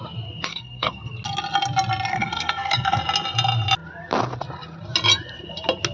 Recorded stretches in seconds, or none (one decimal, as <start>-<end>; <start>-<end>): 0.0-0.5; 1.1-2.1; 3.0-5.9